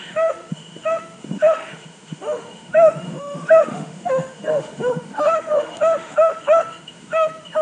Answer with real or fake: fake